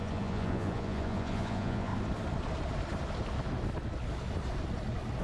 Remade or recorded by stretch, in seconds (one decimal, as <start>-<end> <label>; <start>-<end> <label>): 0.0-1.9 remade; 1.9-5.2 recorded